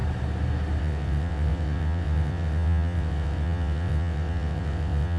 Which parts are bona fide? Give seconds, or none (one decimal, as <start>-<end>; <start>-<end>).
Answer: 0.0-0.8

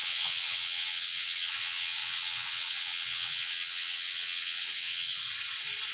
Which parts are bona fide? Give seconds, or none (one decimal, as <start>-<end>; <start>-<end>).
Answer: 5.2-5.9

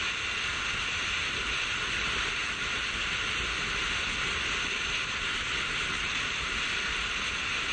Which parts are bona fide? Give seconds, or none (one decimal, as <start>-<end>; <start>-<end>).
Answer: 0.0-7.7